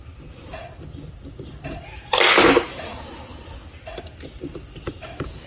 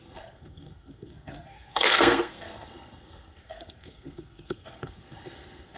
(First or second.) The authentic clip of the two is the first